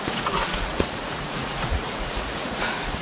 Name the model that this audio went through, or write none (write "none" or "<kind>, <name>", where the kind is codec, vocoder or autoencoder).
vocoder, Vocos